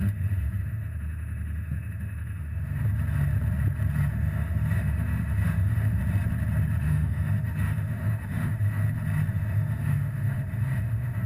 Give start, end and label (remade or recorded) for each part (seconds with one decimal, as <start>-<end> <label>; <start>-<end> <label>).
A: 0.0-2.8 remade; 2.8-4.1 recorded; 4.1-6.0 remade; 6.0-6.8 recorded; 6.8-8.8 remade; 8.8-9.3 recorded; 9.3-11.3 remade